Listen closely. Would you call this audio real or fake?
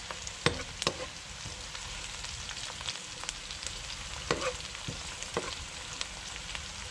real